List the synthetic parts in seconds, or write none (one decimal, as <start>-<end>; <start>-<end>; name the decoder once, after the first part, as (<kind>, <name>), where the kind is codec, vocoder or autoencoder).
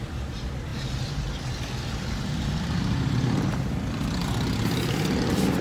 0.0-5.6 (vocoder, BigVGAN v2)